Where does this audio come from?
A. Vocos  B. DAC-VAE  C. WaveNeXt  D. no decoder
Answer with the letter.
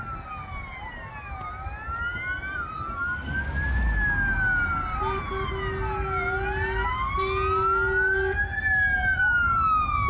D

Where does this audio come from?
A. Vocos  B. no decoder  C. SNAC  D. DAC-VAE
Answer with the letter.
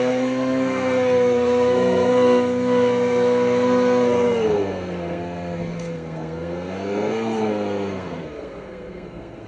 C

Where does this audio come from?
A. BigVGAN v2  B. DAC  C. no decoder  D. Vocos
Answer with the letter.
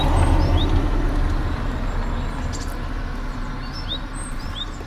C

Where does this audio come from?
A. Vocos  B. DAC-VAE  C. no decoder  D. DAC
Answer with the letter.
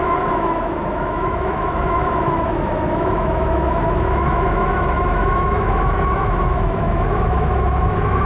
B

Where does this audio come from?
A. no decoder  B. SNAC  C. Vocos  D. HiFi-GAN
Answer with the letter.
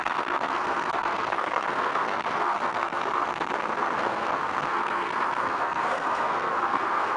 B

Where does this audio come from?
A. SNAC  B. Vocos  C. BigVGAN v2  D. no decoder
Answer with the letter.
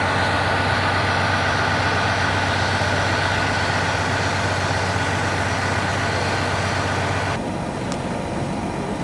D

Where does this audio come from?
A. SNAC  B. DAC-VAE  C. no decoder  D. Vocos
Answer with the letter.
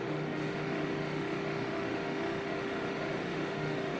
B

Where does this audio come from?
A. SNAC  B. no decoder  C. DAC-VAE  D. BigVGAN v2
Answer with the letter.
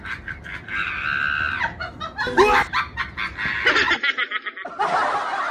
B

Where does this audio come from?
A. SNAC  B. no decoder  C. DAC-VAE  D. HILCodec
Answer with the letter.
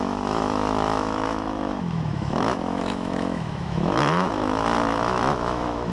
C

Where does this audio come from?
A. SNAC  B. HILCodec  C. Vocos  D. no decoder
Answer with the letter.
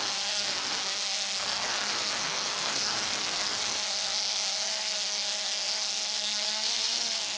A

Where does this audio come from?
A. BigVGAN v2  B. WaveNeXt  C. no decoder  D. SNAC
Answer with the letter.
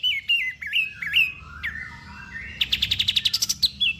C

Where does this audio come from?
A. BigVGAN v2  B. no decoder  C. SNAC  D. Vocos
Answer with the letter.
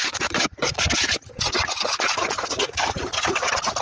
D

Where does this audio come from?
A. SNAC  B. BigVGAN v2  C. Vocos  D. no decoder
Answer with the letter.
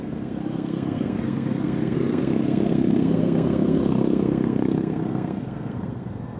A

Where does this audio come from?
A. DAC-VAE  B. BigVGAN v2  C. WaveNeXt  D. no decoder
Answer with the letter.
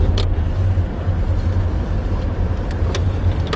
D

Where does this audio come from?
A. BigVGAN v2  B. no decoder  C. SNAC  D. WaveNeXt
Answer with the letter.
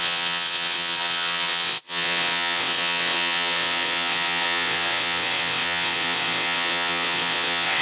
D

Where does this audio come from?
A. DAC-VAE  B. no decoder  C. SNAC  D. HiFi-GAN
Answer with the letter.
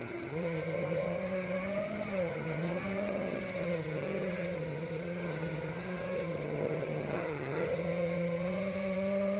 D